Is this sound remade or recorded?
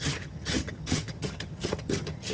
remade